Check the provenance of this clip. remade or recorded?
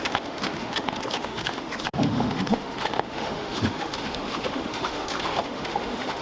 remade